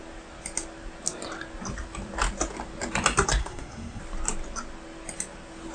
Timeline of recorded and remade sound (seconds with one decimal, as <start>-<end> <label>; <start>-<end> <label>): 0.0-3.4 recorded; 3.4-4.0 remade; 4.0-5.7 recorded

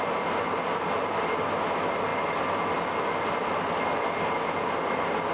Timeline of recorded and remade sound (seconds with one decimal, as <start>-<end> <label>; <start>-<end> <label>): 0.0-5.3 recorded